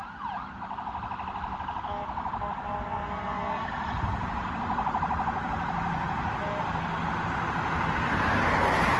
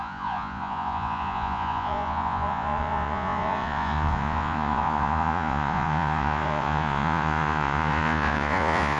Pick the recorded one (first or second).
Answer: first